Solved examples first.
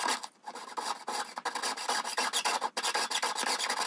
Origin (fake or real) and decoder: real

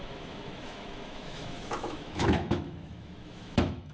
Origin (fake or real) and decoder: fake, autoencoder, DAC-VAE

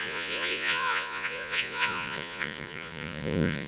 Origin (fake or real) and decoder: fake, vocoder, Vocos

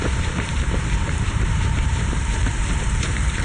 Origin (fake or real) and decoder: fake, vocoder, BigVGAN v2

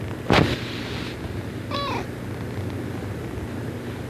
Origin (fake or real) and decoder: real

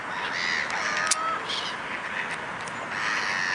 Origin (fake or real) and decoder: real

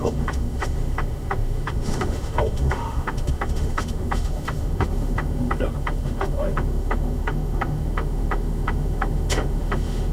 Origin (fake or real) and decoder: fake, autoencoder, DAC-VAE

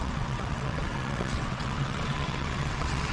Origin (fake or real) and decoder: fake, vocoder, WaveNeXt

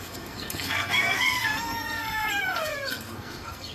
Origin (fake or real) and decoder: fake, codec, SNAC